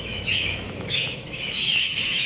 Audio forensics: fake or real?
fake